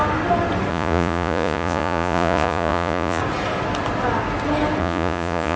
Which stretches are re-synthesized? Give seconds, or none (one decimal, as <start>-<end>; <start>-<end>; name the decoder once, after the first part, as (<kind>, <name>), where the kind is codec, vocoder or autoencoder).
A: 0.7-3.2 (vocoder, Vocos); 4.8-5.6